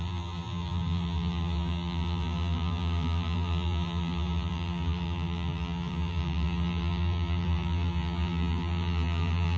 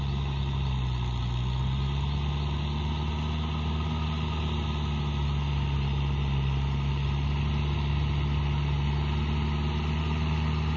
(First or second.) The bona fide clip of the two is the second